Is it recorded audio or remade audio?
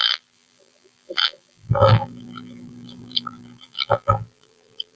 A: remade